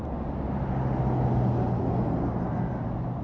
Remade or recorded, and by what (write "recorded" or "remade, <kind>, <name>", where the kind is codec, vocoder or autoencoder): recorded